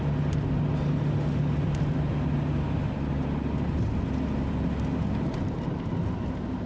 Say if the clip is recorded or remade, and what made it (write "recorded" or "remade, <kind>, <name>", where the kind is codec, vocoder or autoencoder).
recorded